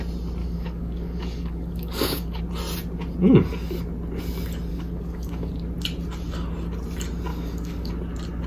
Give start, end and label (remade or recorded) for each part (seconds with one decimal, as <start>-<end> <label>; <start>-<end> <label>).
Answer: 0.0-0.4 recorded; 0.4-2.4 remade; 2.4-4.7 recorded; 4.7-5.5 remade; 5.5-7.3 recorded; 7.3-7.9 remade; 7.9-8.5 recorded